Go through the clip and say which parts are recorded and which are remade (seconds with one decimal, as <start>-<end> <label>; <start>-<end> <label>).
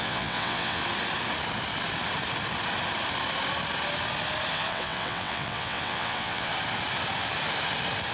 0.0-0.8 remade; 0.8-4.5 recorded; 4.5-6.5 remade; 6.5-8.1 recorded